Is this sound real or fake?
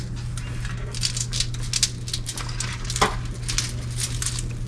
real